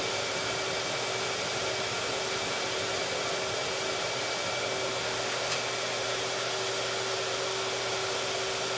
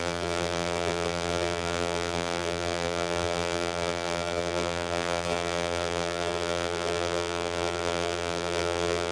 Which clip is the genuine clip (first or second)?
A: first